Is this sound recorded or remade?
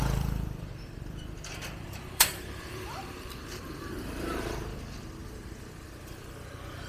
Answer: remade